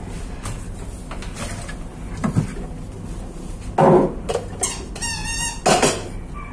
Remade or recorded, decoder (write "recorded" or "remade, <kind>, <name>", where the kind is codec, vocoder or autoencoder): recorded